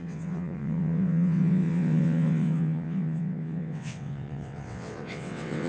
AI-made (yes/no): yes